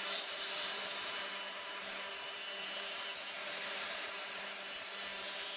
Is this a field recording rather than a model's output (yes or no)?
no